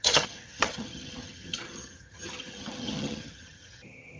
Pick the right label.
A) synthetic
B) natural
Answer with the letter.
A